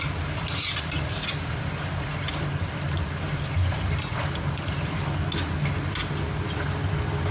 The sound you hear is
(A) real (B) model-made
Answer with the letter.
A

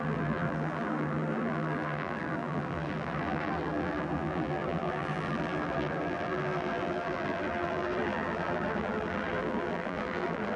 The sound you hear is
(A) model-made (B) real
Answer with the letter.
A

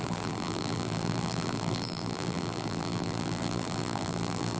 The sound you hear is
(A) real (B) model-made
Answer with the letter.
B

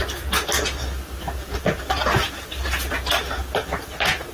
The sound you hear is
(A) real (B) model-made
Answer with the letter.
A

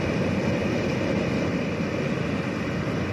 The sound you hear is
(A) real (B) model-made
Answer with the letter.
A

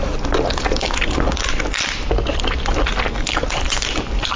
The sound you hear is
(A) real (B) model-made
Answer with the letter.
A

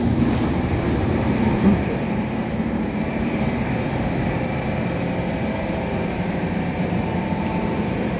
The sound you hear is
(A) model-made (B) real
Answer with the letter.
A